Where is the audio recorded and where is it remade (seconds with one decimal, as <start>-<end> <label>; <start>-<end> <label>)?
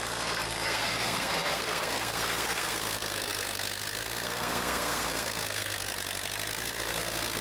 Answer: 0.0-5.9 remade; 5.9-6.5 recorded; 6.5-7.4 remade